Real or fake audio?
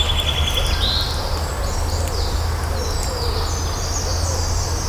real